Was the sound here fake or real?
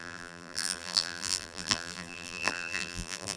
fake